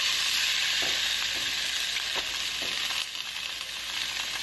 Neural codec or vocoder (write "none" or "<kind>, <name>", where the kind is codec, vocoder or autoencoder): none